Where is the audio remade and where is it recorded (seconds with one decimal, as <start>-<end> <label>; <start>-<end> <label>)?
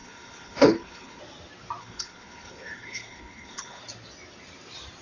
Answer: 0.0-1.2 remade; 1.2-1.8 recorded; 1.8-3.8 remade; 3.8-5.0 recorded